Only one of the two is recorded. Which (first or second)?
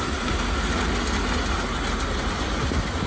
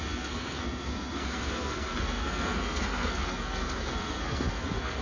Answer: first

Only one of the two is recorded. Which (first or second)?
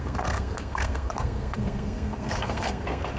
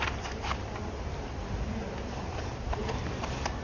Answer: second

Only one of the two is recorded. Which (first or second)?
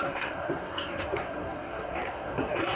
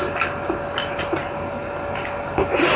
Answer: second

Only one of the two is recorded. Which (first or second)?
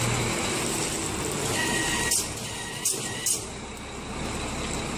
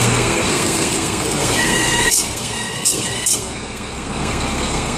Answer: first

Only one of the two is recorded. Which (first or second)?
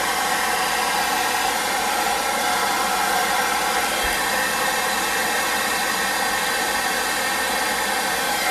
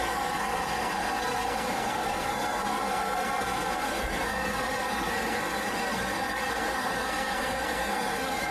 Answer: first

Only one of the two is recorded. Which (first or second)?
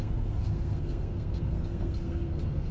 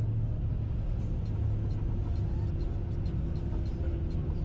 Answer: second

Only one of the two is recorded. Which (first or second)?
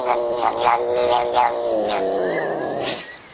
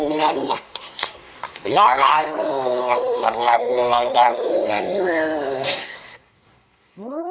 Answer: first